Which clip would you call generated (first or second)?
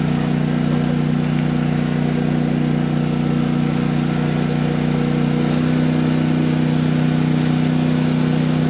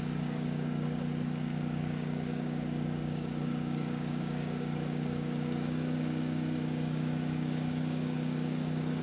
second